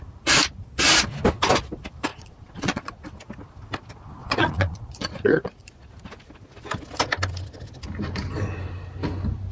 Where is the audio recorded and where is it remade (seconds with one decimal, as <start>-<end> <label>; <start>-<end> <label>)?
0.0-2.1 recorded; 2.1-3.0 remade; 3.0-4.2 recorded; 4.2-5.7 remade; 5.7-9.5 recorded